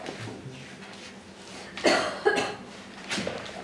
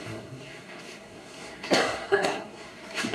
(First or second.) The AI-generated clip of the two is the second